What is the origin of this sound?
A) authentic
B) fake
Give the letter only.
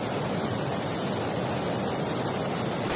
A